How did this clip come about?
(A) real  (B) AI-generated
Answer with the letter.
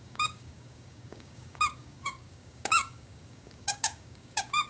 B